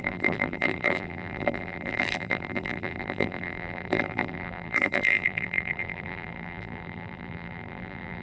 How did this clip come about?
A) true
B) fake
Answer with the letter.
B